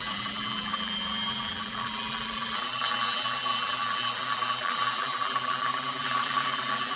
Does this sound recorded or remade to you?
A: remade